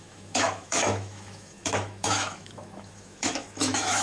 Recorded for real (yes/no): no